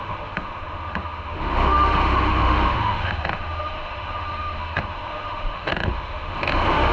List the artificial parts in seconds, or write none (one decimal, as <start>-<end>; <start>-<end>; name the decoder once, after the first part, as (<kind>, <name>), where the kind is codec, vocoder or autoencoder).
0.0-6.9 (autoencoder, DAC-VAE)